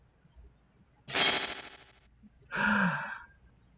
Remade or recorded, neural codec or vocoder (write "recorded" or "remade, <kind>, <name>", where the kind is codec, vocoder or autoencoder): recorded